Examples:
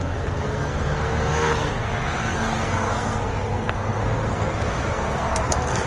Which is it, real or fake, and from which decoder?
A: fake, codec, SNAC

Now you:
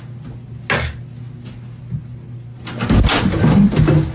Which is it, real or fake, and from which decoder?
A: real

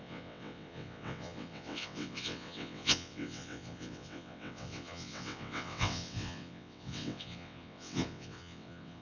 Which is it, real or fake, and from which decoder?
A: fake, vocoder, WaveNeXt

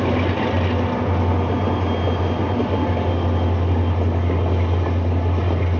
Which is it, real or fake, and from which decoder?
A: real